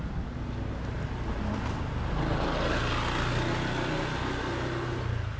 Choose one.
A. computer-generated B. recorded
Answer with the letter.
B